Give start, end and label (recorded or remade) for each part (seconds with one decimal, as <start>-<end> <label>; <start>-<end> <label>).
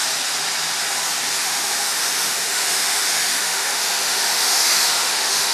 0.0-1.4 recorded; 1.4-5.5 remade